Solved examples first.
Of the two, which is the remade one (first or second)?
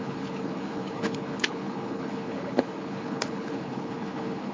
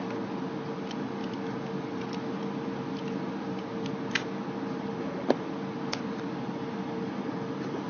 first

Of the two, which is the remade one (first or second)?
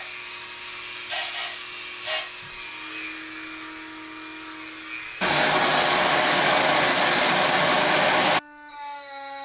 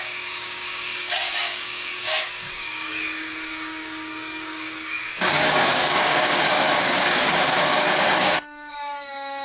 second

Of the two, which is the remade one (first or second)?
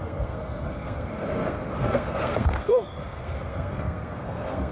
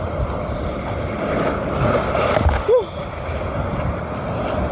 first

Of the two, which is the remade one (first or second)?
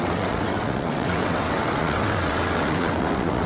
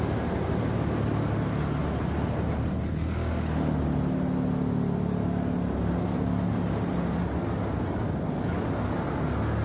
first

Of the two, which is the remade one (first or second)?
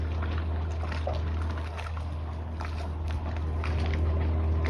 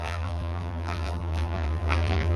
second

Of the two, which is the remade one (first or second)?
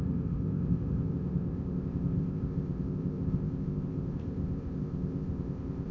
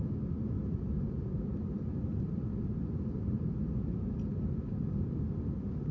first